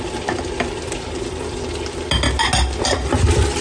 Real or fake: real